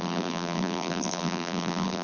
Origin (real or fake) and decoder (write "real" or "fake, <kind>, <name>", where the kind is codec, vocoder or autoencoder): fake, vocoder, BigVGAN v2